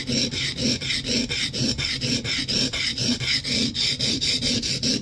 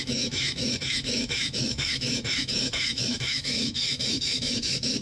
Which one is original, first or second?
first